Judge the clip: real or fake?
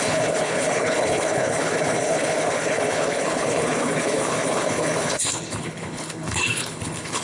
fake